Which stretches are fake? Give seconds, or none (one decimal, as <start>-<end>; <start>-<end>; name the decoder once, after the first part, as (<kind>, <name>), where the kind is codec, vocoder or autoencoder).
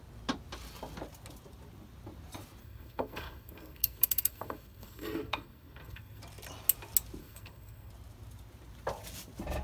2.6-6.2 (codec, SNAC); 7.2-7.9